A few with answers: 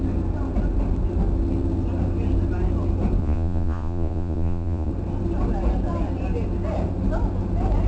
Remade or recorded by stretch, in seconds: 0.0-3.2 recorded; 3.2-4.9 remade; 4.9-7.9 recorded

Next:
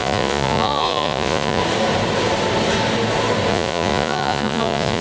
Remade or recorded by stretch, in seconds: 0.0-1.6 remade; 1.6-3.5 recorded; 3.5-5.0 remade

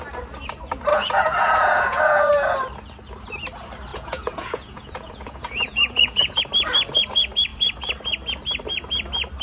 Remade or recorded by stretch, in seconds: 0.0-0.9 recorded; 0.9-2.3 remade; 2.3-3.9 recorded; 3.9-6.4 remade; 6.4-9.4 recorded

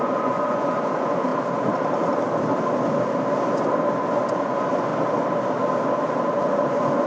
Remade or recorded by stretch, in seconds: 0.0-1.3 remade; 1.3-4.3 recorded; 4.3-4.9 remade; 4.9-6.4 recorded; 6.4-7.1 remade